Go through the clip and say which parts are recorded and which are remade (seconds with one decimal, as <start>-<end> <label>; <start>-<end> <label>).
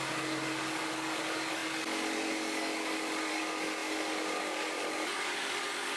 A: 0.0-6.0 remade